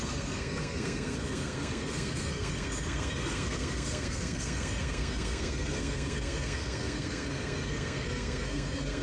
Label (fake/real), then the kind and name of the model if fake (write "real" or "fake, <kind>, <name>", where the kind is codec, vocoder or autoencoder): fake, codec, SNAC